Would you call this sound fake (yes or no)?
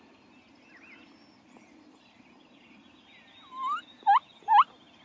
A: no